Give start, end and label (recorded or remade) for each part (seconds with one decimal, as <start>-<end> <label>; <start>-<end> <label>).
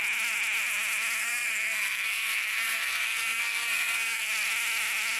0.0-1.2 recorded; 1.2-4.3 remade; 4.3-5.2 recorded